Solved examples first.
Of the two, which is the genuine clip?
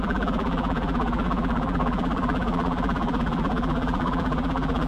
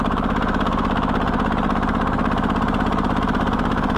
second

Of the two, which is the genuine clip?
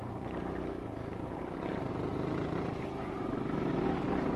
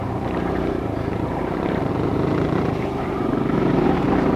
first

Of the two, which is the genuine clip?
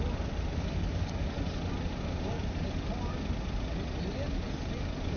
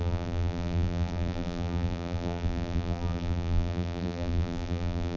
first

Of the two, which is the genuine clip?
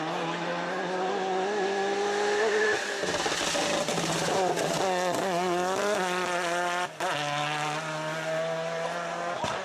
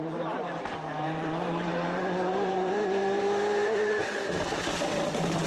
first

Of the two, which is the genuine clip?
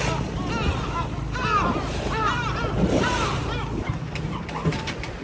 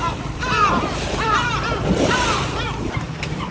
first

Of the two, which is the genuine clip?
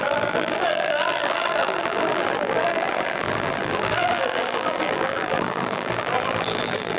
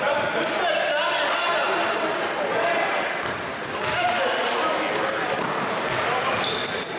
second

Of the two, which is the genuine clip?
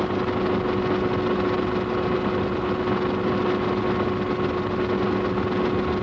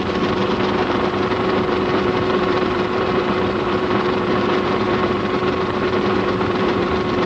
first